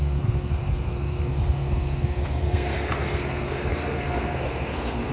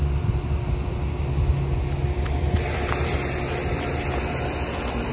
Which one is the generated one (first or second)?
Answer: first